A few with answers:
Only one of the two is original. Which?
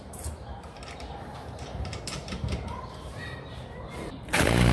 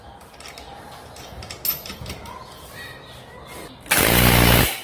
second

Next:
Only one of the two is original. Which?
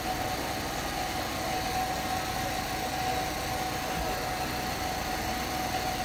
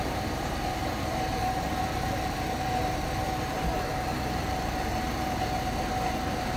first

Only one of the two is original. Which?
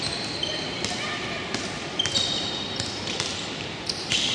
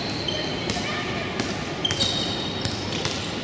second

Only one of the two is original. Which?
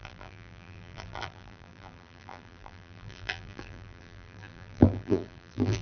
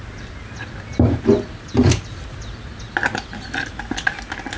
second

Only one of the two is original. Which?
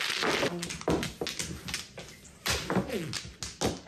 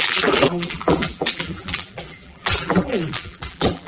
first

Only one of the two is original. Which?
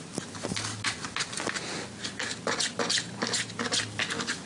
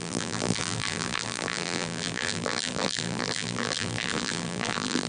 first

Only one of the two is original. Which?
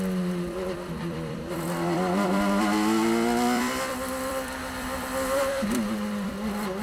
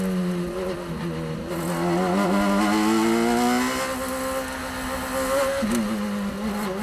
second